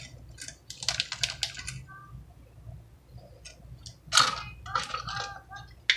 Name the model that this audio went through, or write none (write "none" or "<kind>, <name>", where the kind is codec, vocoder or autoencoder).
none